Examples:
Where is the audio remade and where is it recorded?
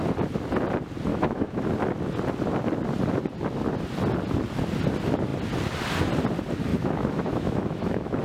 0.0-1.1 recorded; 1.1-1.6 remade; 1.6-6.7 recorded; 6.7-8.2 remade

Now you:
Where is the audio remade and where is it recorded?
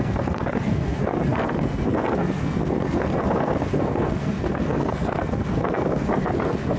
0.0-6.8 remade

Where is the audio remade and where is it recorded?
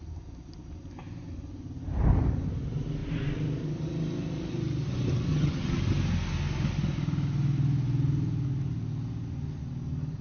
0.0-5.3 recorded; 5.3-5.8 remade; 5.8-10.2 recorded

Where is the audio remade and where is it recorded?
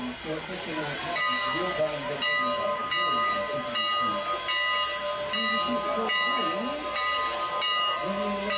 0.0-8.6 recorded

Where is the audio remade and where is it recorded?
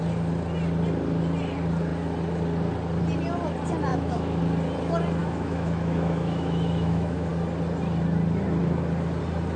0.0-3.9 recorded; 3.9-4.4 remade; 4.4-5.2 recorded; 5.2-7.3 remade; 7.3-9.6 recorded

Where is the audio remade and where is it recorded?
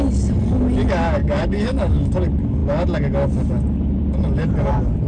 0.0-1.2 recorded; 1.2-2.1 remade; 2.1-5.1 recorded